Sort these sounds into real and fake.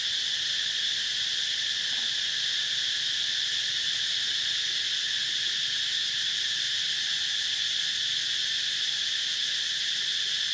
real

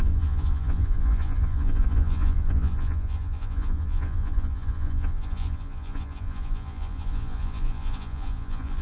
fake